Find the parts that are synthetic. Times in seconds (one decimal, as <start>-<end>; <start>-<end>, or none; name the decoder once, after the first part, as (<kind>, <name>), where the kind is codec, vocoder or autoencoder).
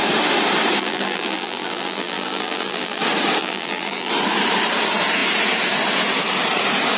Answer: 0.8-3.0 (vocoder, BigVGAN v2); 3.4-4.1